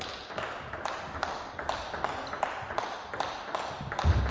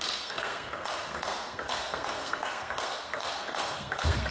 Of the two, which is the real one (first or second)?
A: first